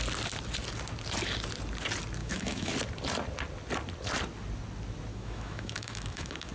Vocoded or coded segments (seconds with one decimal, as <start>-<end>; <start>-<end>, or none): 2.2-2.7; 5.1-6.5